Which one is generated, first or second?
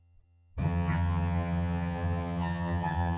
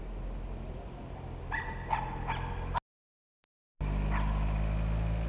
first